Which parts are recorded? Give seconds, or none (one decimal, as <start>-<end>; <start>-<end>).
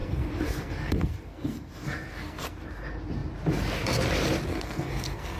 2.7-4.5